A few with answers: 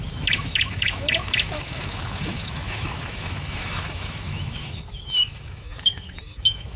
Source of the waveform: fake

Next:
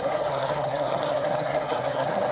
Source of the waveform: fake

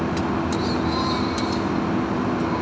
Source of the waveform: real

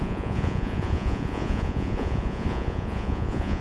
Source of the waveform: fake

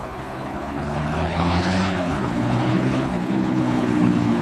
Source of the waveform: fake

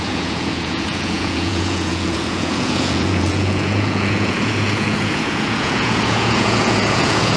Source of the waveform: fake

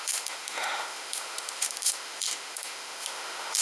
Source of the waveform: fake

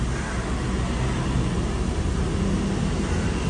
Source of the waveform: real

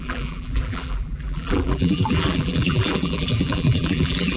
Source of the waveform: fake